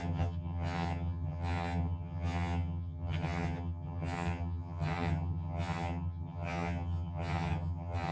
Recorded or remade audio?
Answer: remade